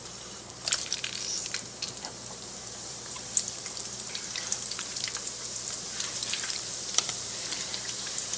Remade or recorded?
remade